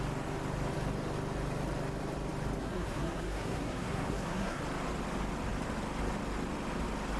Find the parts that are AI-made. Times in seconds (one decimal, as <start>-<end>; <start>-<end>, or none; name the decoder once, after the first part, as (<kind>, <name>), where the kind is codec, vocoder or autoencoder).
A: 2.6-4.6 (codec, SNAC)